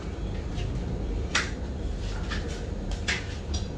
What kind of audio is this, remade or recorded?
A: recorded